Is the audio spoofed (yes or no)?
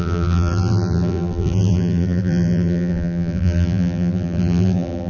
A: yes